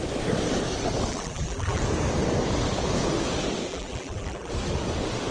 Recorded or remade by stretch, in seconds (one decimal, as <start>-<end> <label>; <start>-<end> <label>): 0.0-1.1 recorded; 1.1-1.8 remade; 1.8-3.7 recorded; 3.7-4.5 remade; 4.5-5.3 recorded